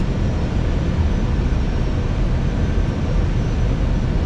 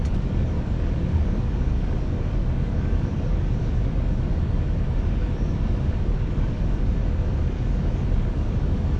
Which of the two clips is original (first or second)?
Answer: first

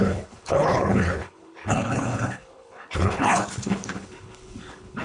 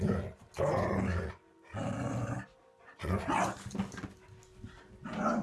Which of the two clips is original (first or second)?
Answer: second